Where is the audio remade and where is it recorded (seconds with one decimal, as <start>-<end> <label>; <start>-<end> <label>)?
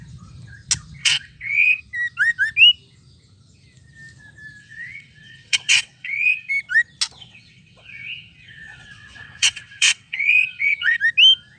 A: 0.0-1.0 recorded; 1.0-1.8 remade; 1.8-4.6 recorded; 4.6-6.5 remade; 6.5-7.2 recorded; 7.2-11.0 remade; 11.0-11.6 recorded